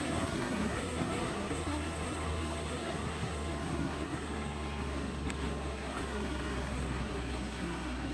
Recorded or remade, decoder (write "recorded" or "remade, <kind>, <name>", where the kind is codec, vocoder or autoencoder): remade, codec, SNAC